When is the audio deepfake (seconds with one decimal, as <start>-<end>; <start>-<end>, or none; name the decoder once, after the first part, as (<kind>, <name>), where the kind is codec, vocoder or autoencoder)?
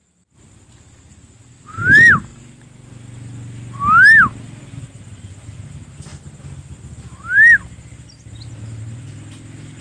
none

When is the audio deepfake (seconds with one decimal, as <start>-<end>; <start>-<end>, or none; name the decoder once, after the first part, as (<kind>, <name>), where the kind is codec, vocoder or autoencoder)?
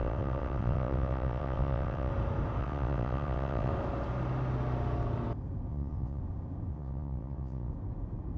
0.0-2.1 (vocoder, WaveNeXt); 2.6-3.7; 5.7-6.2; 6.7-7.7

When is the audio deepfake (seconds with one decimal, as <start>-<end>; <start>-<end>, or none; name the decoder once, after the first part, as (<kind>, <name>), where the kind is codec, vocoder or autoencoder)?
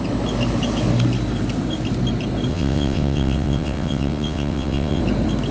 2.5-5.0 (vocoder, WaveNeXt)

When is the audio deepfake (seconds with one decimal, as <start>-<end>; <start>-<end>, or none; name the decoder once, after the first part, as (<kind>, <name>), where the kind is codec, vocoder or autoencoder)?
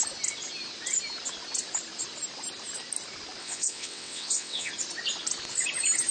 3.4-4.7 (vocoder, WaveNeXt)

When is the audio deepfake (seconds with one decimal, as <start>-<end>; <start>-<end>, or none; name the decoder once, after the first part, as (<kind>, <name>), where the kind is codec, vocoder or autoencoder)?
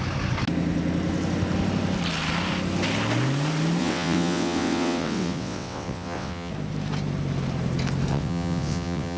3.8-6.5 (vocoder, WaveNeXt); 8.1-9.2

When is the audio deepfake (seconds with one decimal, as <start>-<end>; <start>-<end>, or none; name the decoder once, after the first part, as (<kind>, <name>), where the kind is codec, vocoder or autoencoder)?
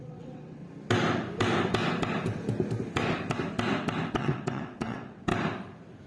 0.0-0.6 (vocoder, WaveNeXt); 4.1-5.3